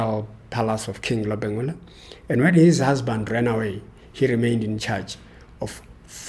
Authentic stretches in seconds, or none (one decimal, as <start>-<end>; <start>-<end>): 0.0-6.3